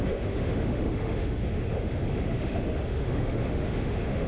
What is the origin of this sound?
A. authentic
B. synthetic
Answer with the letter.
B